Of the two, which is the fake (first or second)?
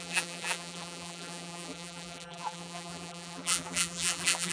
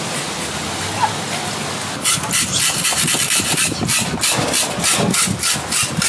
first